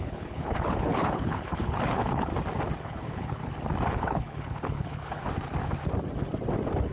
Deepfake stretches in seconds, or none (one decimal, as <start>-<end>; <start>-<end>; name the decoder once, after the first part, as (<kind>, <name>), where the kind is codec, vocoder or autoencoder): 0.0-2.3 (codec, HILCodec); 2.8-3.4; 3.9-5.2